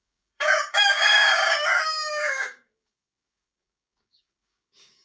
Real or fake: fake